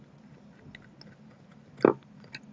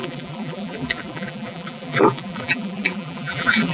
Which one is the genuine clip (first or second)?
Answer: first